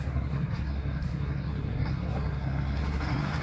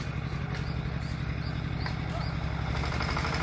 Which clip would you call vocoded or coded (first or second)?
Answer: first